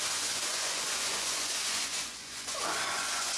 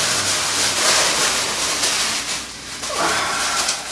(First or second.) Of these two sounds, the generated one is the first